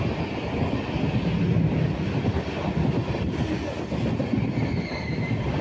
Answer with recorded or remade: recorded